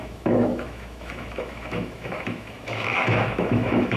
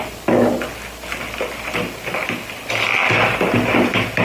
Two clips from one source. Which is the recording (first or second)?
second